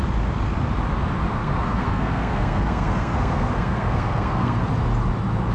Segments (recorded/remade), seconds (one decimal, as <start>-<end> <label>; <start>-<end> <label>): 0.0-1.3 recorded; 1.3-4.6 remade; 4.6-5.5 recorded